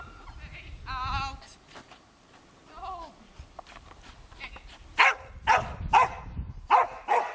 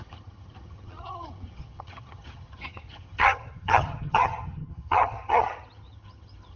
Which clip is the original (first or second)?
first